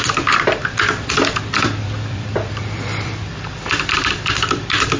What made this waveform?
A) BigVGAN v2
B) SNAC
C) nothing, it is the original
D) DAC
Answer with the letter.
A